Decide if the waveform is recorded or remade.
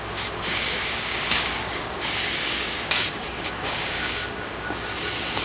remade